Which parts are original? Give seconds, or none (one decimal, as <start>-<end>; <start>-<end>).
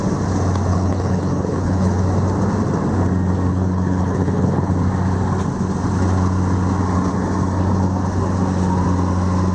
0.0-0.7; 2.0-3.5; 4.7-9.5